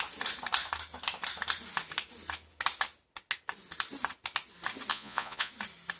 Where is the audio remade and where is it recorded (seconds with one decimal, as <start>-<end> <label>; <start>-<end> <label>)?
0.0-4.9 recorded; 4.9-5.5 remade; 5.5-6.0 recorded